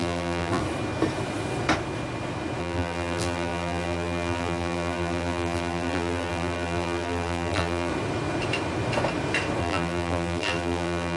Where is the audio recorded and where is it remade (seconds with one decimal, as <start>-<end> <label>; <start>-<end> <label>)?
0.0-0.6 remade; 0.6-2.6 recorded; 2.6-7.9 remade; 7.9-9.6 recorded; 9.6-11.2 remade